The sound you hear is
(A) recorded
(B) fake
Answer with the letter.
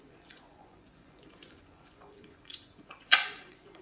B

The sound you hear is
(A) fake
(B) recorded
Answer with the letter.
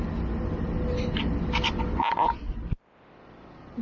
B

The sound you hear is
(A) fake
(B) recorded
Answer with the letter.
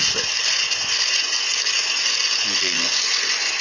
A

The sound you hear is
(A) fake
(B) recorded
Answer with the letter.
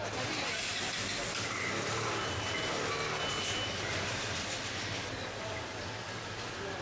B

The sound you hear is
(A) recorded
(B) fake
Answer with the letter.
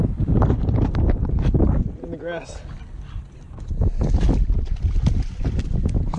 A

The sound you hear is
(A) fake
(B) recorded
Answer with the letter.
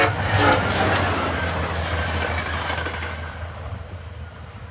B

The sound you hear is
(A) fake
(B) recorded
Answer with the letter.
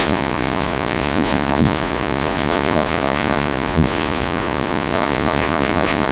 A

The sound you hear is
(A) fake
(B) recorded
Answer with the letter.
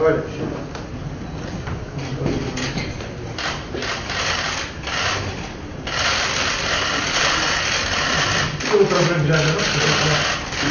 B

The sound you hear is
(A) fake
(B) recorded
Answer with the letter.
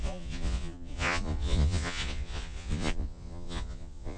A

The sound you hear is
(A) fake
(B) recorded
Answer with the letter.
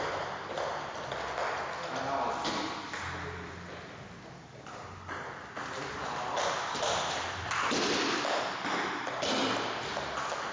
B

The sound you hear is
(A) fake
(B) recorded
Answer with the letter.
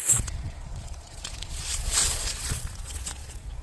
A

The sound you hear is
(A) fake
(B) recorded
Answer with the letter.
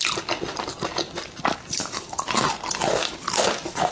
B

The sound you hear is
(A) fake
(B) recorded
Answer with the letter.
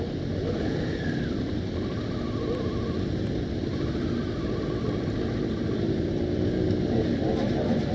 B